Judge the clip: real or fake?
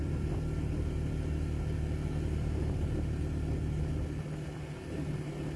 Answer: real